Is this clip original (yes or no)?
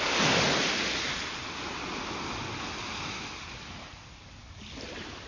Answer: yes